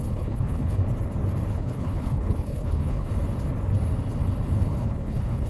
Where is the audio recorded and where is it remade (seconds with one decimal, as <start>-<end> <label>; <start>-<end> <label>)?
0.0-0.8 remade; 0.8-1.5 recorded; 1.5-3.1 remade; 3.1-4.6 recorded; 4.6-5.5 remade